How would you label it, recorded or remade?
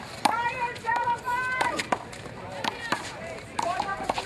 remade